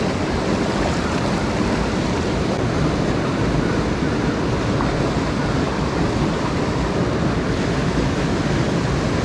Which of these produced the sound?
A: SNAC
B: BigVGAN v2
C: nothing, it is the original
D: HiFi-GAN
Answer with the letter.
C